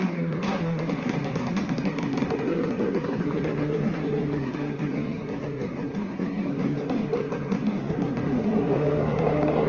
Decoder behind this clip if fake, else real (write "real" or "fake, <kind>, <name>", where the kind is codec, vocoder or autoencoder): fake, codec, SNAC